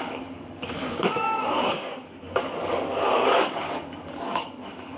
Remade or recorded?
remade